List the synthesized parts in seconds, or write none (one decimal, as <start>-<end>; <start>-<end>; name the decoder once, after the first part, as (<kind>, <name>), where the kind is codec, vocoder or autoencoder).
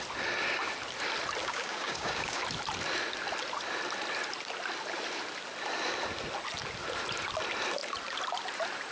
1.4-2.4 (codec, DAC)